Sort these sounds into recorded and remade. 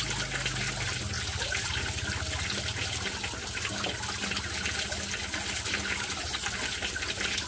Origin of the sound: recorded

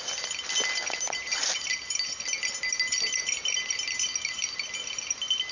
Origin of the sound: recorded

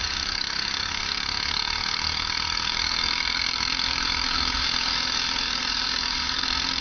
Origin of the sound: remade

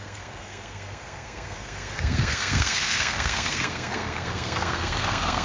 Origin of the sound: remade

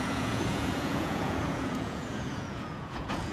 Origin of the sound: remade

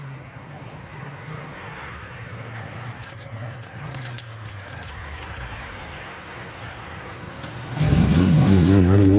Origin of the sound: remade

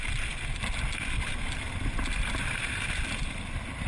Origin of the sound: recorded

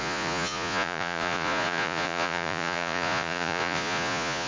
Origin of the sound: remade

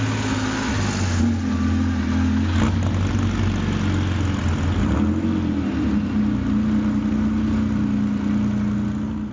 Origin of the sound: recorded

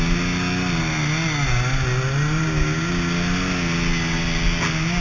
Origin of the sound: recorded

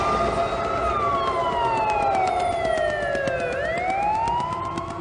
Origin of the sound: recorded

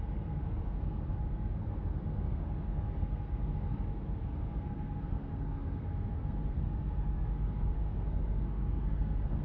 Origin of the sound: remade